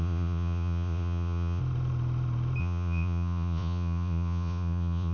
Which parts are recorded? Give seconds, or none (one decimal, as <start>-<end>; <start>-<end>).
1.6-2.6